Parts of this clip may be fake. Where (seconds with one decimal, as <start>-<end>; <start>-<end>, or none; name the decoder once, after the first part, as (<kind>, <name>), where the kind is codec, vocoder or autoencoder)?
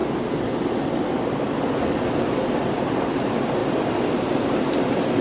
none